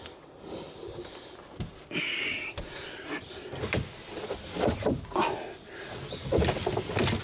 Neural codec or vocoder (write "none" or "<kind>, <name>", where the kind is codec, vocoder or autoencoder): none